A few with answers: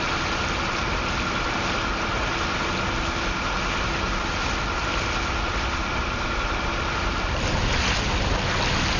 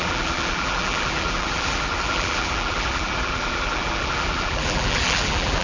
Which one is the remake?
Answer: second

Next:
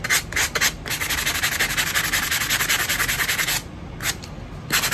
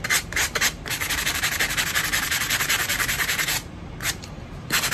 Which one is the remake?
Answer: second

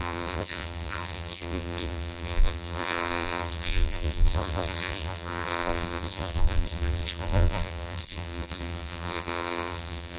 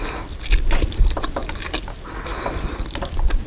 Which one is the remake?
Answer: first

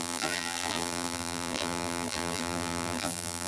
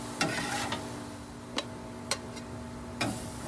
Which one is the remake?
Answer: first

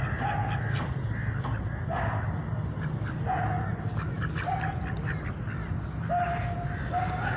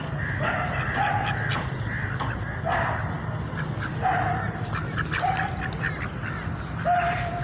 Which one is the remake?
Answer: second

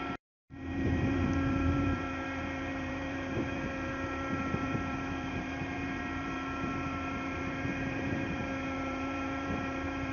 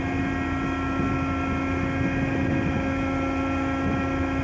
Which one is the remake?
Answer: first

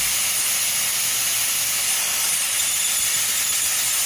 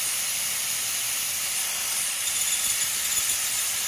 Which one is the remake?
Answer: second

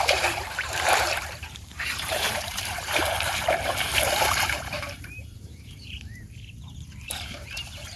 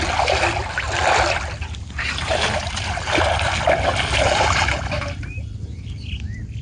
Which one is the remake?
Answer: first